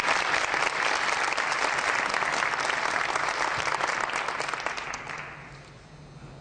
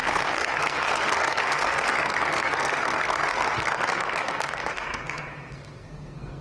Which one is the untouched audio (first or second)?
first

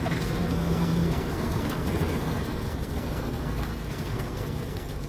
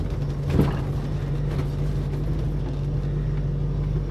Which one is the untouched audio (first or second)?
second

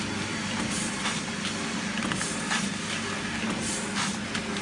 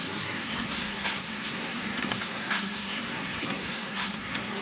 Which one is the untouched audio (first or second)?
first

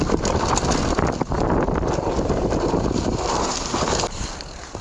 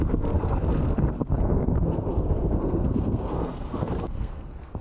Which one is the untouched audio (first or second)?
first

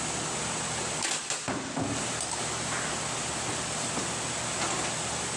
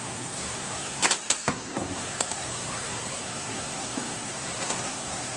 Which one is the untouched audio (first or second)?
first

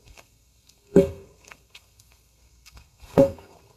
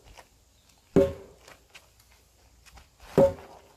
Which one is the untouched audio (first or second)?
second